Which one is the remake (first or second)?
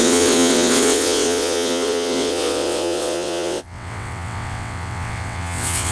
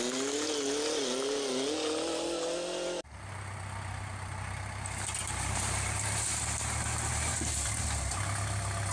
first